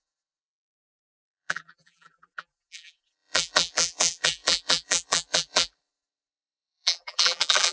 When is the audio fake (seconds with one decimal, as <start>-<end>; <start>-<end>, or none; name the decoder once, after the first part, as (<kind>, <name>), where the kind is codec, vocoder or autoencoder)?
0.0-7.7 (vocoder, BigVGAN v2)